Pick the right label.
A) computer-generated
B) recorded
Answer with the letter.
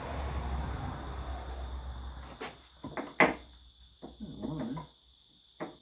B